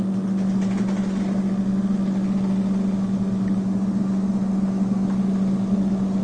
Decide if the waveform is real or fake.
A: real